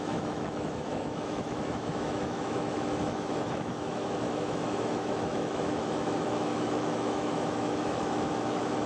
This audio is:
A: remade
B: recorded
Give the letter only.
A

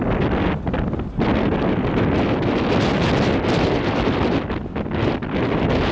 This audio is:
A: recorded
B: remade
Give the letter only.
A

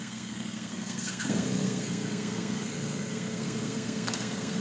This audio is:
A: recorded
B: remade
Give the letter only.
B